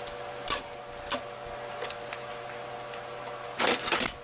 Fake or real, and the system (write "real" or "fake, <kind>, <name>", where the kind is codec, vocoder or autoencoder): real